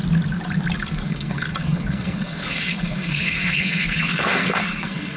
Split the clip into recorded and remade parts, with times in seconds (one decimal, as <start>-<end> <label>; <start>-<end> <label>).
0.0-0.8 recorded; 0.8-5.2 remade